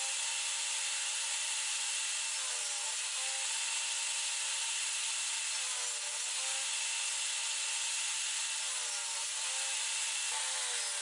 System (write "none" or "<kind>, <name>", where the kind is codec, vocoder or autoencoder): none